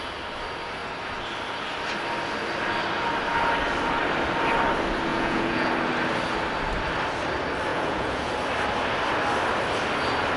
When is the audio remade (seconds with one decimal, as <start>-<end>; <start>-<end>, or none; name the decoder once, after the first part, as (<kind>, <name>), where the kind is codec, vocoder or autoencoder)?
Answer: 5.1-5.7 (vocoder, Vocos); 7.7-8.3